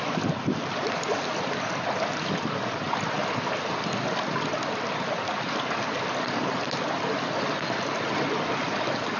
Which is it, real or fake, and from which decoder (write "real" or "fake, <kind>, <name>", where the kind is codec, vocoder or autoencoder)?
real